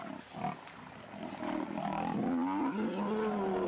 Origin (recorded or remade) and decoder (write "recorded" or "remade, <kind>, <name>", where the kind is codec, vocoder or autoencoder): recorded